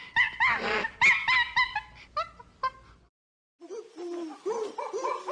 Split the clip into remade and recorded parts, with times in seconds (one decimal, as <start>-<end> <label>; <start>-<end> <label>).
0.0-5.3 recorded